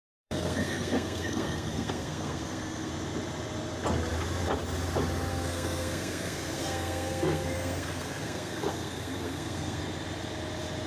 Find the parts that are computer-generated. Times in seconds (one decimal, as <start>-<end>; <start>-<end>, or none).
0.0-2.9; 5.3-9.8

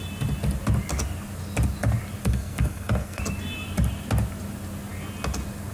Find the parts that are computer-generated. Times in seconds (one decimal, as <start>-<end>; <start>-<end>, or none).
2.2-3.2

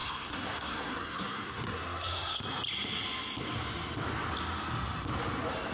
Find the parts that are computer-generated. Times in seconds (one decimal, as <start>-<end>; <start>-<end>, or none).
0.0-2.4